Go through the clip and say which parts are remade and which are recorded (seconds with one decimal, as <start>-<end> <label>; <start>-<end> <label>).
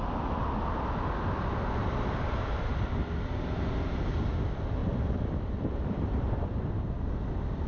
0.0-1.8 recorded; 1.8-2.9 remade; 2.9-4.8 recorded; 4.8-6.7 remade; 6.7-7.7 recorded